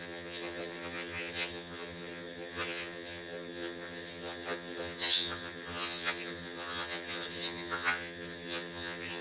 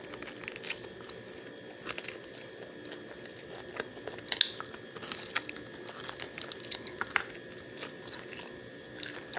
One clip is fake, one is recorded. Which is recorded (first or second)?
second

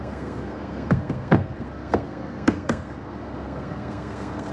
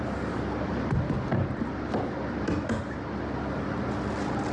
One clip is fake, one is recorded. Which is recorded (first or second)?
second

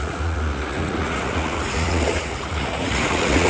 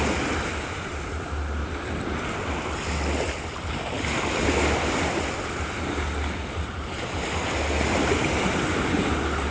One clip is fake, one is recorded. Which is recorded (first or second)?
second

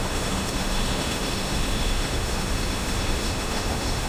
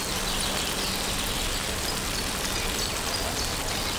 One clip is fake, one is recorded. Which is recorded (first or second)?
second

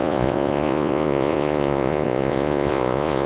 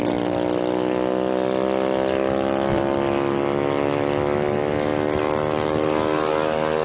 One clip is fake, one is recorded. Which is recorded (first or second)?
second